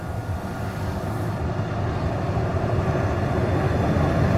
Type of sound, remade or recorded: recorded